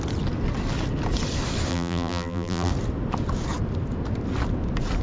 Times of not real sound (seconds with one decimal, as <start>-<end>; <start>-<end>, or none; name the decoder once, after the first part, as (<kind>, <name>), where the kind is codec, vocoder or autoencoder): 1.7-2.7 (vocoder, BigVGAN v2)